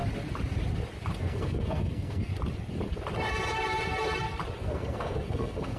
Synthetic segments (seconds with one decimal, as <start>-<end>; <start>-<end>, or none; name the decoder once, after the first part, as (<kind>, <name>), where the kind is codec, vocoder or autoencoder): 1.2-2.3 (codec, SNAC); 4.6-5.8